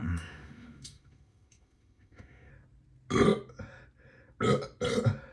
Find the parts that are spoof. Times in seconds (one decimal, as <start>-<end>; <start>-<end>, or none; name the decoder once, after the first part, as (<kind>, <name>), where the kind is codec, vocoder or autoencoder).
0.0-2.5 (autoencoder, DAC-VAE)